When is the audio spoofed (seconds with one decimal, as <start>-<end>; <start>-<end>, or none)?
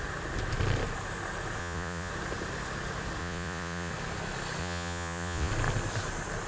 1.6-2.1; 3.2-3.9; 4.6-5.5